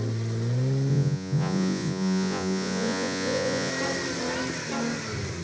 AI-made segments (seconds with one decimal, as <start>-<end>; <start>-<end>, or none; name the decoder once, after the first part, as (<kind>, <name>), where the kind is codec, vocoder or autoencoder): 0.9-3.7 (vocoder, Vocos)